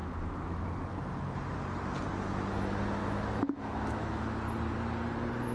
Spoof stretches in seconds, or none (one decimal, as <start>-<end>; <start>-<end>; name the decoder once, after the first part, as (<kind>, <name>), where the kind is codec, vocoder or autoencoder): 0.0-0.6 (autoencoder, DAC-VAE); 3.0-4.2